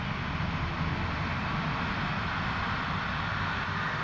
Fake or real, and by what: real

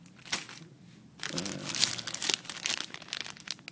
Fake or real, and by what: real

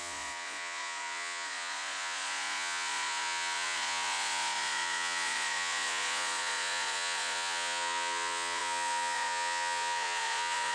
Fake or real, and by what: fake, vocoder, Vocos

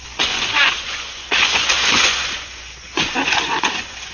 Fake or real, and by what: fake, vocoder, Vocos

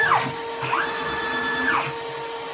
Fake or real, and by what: real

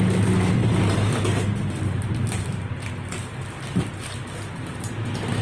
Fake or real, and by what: real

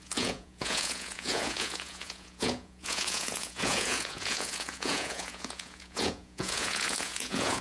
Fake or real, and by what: fake, vocoder, Vocos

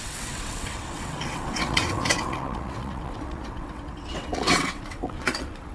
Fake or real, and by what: fake, vocoder, WaveNeXt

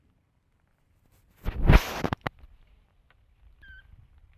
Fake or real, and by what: real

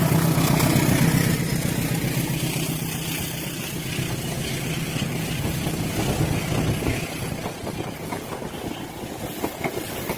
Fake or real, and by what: real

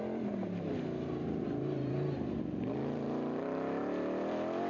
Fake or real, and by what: fake, vocoder, BigVGAN v2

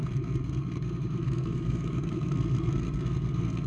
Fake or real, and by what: fake, codec, SNAC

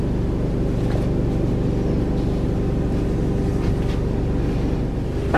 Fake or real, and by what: real